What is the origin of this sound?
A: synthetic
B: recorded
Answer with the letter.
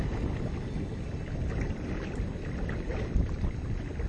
B